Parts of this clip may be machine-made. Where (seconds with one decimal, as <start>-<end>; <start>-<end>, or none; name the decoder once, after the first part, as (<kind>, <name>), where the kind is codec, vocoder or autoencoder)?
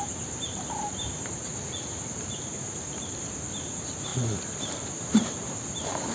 0.0-1.5 (vocoder, BigVGAN v2); 2.1-4.1; 4.6-6.1